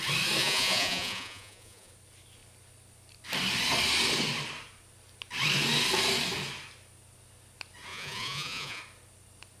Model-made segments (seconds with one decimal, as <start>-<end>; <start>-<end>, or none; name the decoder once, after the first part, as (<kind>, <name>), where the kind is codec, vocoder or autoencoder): 0.4-1.9 (vocoder, Vocos); 7.9-8.8